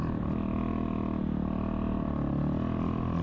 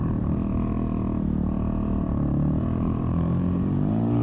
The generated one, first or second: second